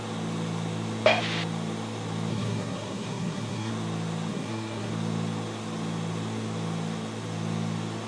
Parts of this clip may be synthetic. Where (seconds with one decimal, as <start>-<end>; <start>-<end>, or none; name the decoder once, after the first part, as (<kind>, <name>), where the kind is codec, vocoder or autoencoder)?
2.3-3.7 (codec, SNAC); 4.3-4.9